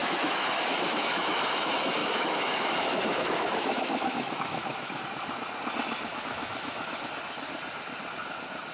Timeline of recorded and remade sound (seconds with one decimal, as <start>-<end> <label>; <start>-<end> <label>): 0.0-1.4 remade; 1.4-2.0 recorded; 2.0-5.0 remade; 5.0-6.1 recorded; 6.1-7.0 remade; 7.0-8.7 recorded